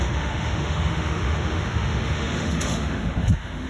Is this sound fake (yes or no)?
yes